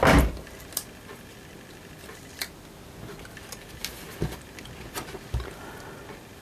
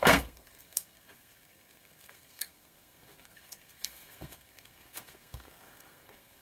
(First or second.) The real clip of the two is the first